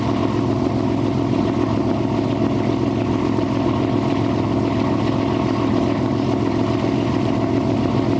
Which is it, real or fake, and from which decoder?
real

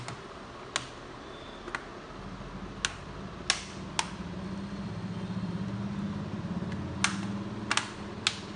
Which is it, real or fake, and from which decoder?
real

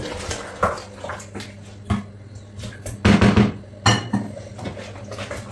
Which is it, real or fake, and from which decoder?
real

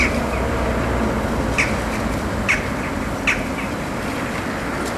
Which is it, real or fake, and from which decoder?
real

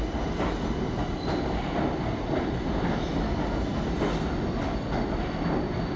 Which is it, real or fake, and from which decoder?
real